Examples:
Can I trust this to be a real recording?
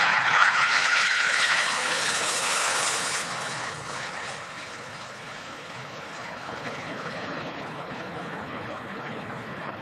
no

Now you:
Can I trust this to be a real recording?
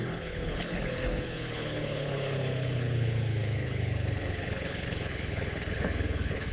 no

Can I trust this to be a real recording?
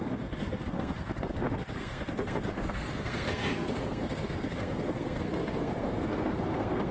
no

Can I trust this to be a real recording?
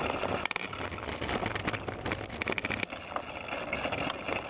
yes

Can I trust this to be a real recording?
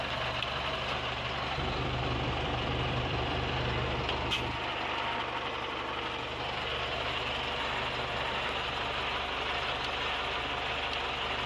no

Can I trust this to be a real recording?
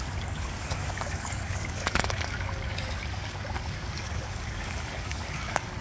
no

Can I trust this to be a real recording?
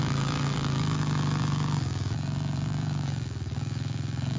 no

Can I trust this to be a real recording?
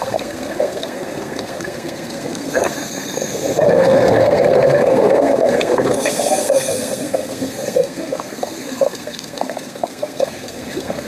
no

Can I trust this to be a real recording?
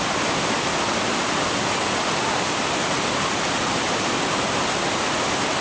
yes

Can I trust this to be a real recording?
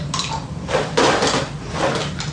yes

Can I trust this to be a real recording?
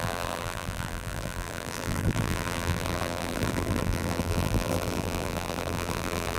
no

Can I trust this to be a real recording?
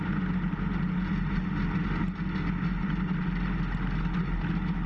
yes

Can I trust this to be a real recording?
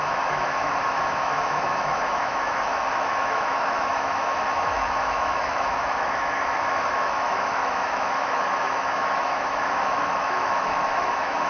no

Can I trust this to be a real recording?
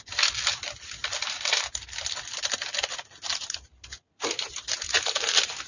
yes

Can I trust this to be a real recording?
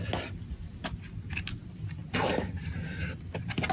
yes